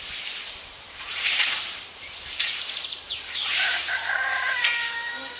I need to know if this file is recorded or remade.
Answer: remade